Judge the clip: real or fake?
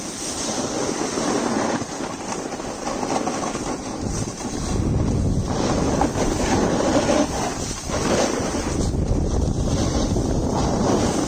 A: real